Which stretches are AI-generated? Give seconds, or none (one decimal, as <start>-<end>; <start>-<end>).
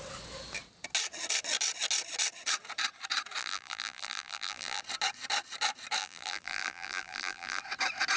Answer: 3.4-4.8; 6.0-7.6